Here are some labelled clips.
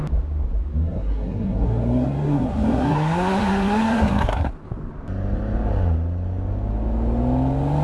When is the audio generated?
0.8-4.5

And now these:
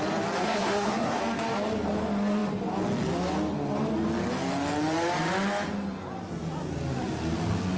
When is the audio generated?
0.4-1.2